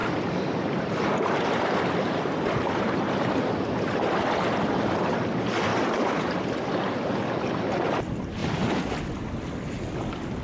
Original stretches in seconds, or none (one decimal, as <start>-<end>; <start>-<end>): 3.5-5.7; 6.2-8.4; 9.0-10.4